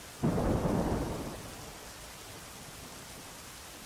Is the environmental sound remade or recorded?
recorded